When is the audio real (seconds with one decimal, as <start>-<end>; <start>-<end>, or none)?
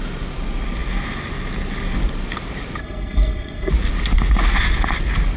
0.0-2.8; 3.7-5.4